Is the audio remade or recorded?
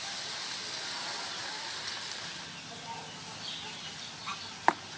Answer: recorded